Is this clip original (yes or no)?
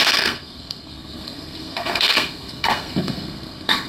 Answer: no